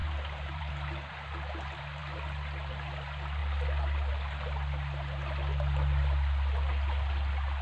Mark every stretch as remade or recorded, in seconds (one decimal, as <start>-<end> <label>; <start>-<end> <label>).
0.0-0.7 remade; 0.7-7.6 recorded